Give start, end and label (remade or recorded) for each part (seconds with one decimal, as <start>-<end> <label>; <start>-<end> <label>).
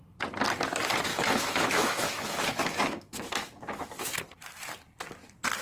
0.0-1.1 recorded; 1.1-4.1 remade; 4.1-5.6 recorded